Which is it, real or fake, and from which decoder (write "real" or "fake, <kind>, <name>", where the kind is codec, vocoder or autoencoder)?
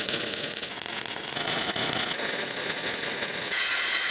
fake, vocoder, Vocos